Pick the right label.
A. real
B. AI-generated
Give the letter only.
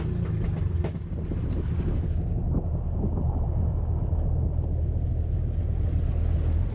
A